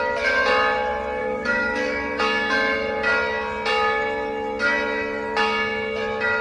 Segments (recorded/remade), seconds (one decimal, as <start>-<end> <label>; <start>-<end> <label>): 0.0-1.2 recorded; 1.2-2.2 remade; 2.2-6.4 recorded